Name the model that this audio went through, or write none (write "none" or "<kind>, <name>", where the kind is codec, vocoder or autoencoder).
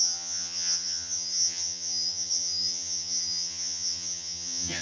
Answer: vocoder, HiFi-GAN